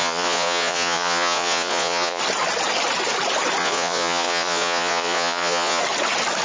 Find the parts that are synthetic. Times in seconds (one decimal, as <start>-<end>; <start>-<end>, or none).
0.0-2.2; 3.6-5.8